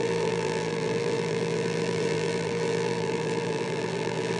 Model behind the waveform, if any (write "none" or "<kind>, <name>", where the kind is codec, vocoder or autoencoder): vocoder, BigVGAN v2